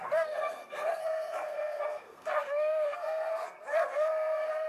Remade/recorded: remade